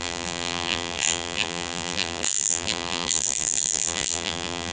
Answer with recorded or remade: remade